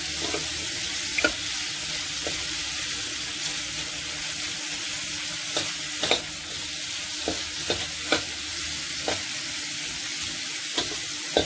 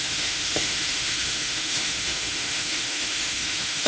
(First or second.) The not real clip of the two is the second